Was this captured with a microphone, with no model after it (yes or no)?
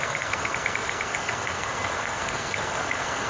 no